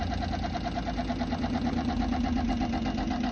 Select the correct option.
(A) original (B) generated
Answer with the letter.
A